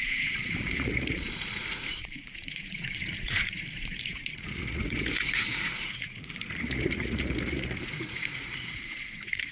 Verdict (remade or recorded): remade